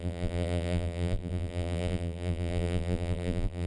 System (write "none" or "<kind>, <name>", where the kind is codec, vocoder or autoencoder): vocoder, BigVGAN v2